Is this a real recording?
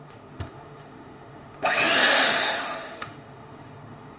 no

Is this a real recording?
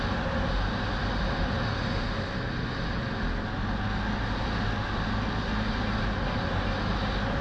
yes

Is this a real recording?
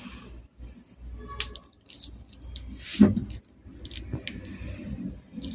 yes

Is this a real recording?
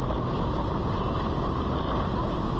no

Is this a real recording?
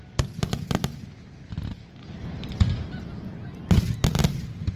yes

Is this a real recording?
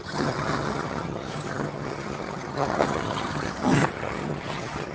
no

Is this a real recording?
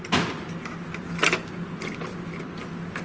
yes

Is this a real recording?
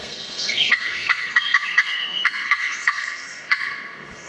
no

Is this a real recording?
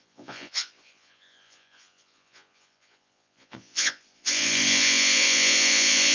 no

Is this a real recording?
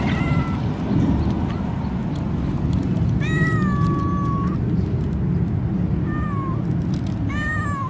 yes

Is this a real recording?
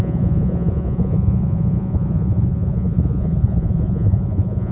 no